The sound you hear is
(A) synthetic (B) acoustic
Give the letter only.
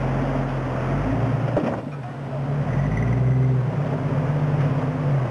B